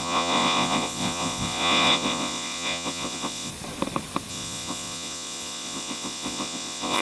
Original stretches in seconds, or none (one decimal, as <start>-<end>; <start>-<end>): 3.5-4.3